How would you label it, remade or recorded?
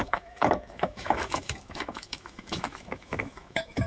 remade